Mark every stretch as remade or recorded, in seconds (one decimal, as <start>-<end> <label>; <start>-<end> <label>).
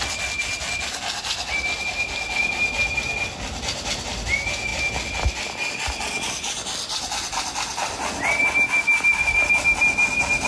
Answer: 0.0-10.5 recorded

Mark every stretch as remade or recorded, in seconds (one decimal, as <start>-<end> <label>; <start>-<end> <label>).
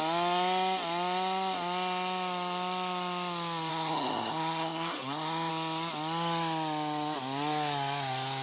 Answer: 0.0-3.7 recorded; 3.7-5.5 remade; 5.5-8.4 recorded